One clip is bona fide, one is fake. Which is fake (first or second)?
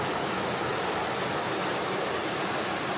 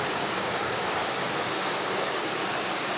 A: second